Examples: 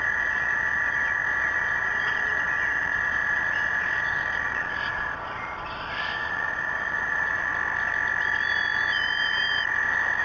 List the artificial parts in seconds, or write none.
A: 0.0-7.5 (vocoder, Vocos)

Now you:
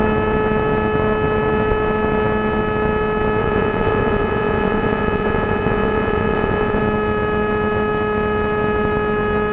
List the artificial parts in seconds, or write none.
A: 3.4-6.8 (vocoder, Vocos)

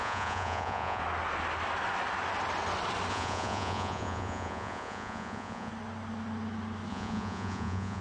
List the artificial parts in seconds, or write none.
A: 0.0-1.0 (vocoder, Vocos); 3.1-5.7; 6.9-8.0

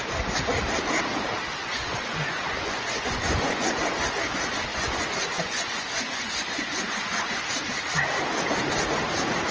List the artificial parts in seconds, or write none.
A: 1.6-3.7 (vocoder, Vocos); 4.7-7.4

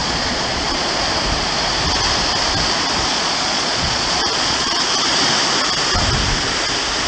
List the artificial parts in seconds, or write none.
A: 0.0-1.0 (vocoder, Vocos); 3.1-4.8